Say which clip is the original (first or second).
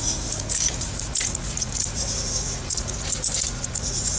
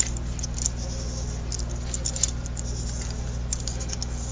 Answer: second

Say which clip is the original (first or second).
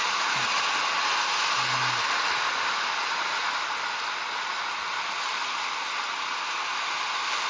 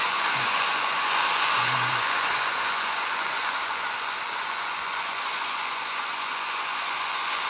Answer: first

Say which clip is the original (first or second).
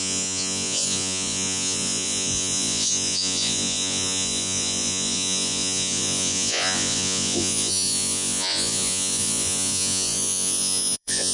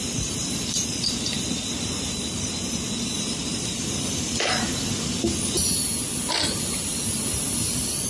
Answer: second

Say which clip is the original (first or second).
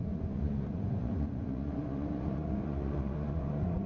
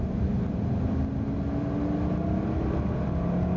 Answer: second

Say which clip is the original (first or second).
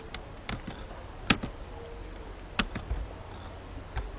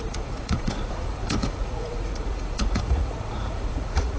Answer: first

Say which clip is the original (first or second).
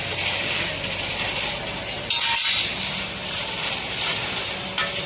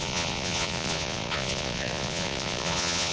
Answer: first